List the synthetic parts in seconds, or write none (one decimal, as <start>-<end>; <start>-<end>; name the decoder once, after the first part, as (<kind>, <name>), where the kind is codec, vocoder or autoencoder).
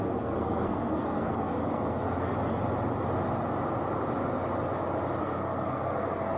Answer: 0.0-2.3 (codec, SNAC); 5.2-6.4